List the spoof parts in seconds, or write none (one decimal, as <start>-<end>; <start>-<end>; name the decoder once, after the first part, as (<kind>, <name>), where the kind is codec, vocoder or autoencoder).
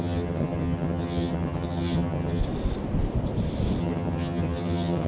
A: 0.0-2.4 (vocoder, HiFi-GAN); 3.8-5.1